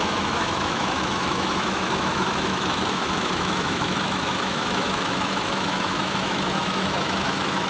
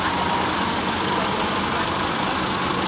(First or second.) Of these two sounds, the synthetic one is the first